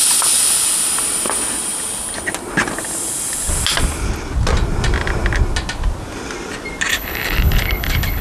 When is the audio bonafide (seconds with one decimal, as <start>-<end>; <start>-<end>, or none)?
0.0-6.9